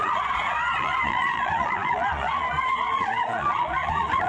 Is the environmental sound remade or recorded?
remade